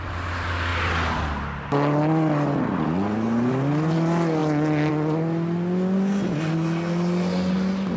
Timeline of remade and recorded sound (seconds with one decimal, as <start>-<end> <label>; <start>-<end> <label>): 0.0-8.0 recorded